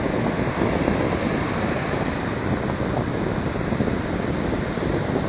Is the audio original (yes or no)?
yes